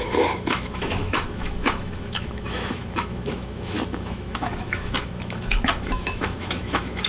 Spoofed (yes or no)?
yes